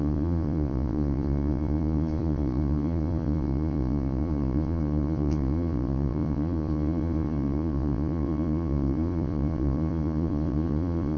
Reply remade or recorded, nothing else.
remade